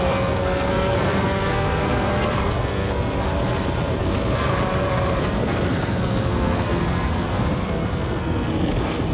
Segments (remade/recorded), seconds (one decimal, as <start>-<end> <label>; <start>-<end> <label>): 0.0-3.3 remade; 3.3-4.0 recorded; 4.0-4.5 remade; 4.5-5.2 recorded; 5.2-9.1 remade